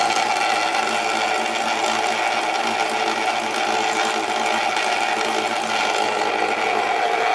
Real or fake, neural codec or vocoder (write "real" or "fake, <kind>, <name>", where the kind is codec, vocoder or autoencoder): real